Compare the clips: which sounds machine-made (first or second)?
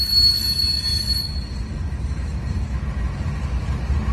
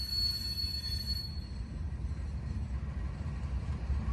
second